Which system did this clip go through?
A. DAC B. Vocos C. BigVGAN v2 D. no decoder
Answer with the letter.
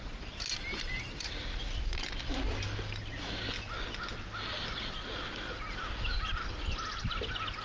D